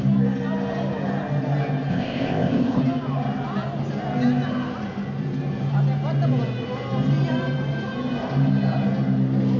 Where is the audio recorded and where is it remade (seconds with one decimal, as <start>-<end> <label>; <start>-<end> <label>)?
0.0-1.9 recorded; 1.9-2.8 remade; 2.8-9.6 recorded